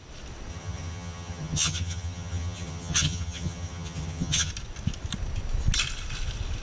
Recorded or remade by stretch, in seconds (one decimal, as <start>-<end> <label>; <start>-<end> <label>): 0.0-0.5 recorded; 0.5-4.5 remade; 4.5-6.6 recorded